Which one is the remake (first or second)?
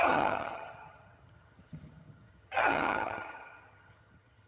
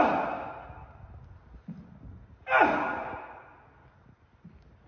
first